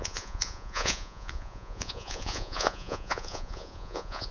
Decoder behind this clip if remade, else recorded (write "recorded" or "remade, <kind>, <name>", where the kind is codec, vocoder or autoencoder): remade, vocoder, Vocos